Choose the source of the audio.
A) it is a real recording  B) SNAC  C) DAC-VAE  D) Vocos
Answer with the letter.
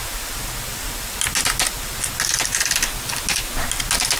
A